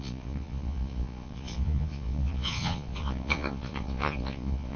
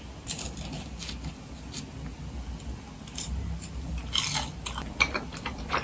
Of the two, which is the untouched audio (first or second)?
second